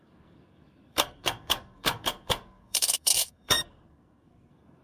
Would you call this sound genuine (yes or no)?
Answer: no